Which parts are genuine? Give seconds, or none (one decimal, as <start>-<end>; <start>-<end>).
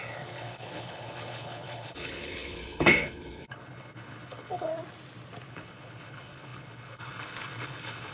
4.7-5.5